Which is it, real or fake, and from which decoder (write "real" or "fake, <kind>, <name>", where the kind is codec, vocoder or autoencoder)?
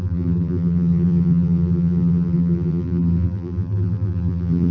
fake, vocoder, BigVGAN v2